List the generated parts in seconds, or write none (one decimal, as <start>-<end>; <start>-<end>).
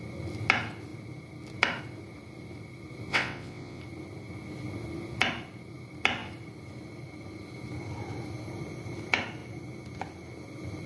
3.1-3.8